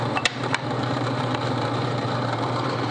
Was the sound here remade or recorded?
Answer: remade